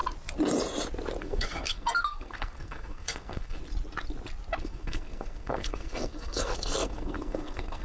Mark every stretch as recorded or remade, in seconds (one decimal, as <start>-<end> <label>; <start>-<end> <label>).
0.0-1.2 recorded; 1.2-3.6 remade; 3.6-4.6 recorded; 4.6-7.8 remade